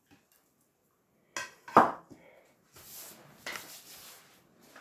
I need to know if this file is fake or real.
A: real